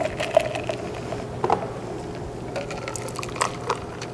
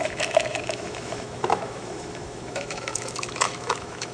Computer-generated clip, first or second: second